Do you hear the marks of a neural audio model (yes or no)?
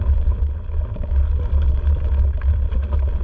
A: no